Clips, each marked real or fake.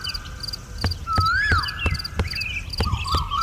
real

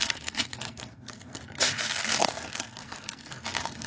fake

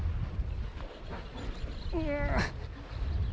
real